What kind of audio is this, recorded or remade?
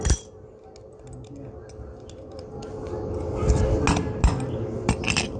recorded